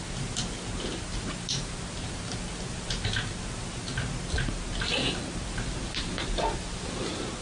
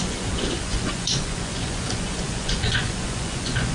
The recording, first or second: first